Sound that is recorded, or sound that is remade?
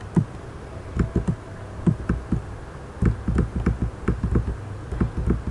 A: recorded